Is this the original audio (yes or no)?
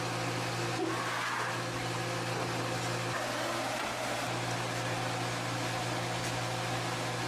yes